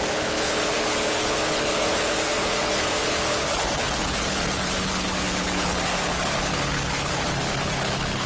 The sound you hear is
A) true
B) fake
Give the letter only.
B